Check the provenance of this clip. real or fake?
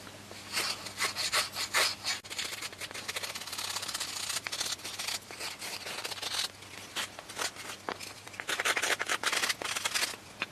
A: real